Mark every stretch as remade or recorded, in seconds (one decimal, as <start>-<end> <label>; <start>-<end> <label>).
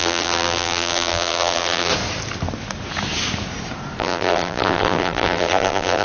0.0-1.9 remade; 1.9-4.0 recorded; 4.0-6.0 remade